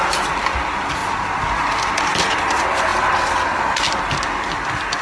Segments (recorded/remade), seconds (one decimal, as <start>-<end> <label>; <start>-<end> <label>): 0.0-5.0 recorded